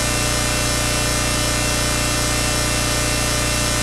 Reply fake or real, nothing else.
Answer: real